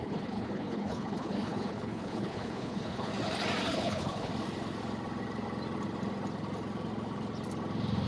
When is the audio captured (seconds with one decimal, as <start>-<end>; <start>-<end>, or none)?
3.1-3.7; 4.3-8.1